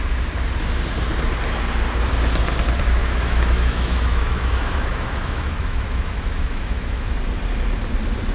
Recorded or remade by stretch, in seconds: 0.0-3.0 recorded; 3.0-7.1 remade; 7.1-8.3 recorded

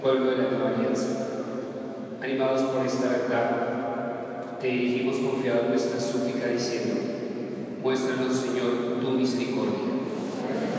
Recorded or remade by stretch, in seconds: 0.0-3.9 remade; 3.9-4.6 recorded; 4.6-6.1 remade; 6.1-7.0 recorded; 7.0-7.6 remade; 7.6-9.5 recorded; 9.5-10.8 remade